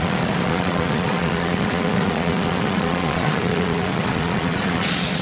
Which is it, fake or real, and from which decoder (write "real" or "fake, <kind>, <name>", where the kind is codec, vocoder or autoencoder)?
fake, vocoder, Vocos